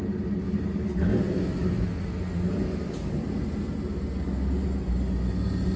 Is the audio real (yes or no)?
yes